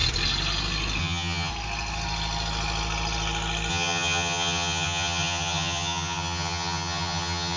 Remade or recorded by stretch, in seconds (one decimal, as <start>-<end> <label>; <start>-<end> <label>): 0.0-1.0 recorded; 1.0-1.5 remade; 1.5-3.7 recorded; 3.7-7.6 remade